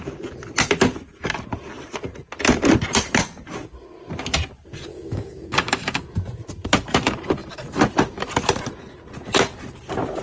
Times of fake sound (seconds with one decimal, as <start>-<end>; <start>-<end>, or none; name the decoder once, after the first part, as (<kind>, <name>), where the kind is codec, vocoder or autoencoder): 4.9-6.1 (codec, DAC)